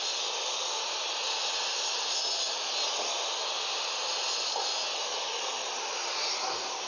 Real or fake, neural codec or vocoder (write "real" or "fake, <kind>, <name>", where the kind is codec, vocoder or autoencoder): real